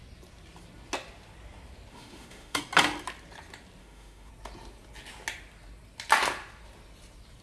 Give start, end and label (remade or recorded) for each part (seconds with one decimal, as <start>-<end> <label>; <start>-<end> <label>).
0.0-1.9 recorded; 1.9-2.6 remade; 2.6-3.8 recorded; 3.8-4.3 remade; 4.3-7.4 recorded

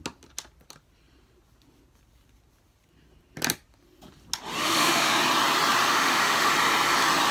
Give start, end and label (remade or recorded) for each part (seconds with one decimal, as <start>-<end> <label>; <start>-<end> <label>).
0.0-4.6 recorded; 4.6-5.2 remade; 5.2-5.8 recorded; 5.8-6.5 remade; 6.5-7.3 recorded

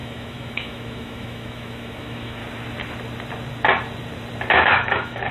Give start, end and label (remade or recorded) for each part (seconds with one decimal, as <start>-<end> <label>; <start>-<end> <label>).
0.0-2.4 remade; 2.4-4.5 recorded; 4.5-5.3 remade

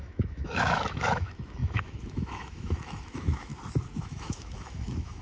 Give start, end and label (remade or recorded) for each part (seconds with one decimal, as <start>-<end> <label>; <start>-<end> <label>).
0.0-3.5 remade; 3.5-4.0 recorded; 4.0-5.2 remade

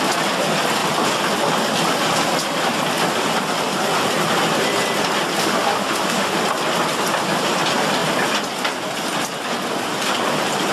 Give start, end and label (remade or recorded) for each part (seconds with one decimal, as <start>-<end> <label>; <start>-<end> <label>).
0.0-5.4 recorded; 5.4-6.4 remade; 6.4-10.7 recorded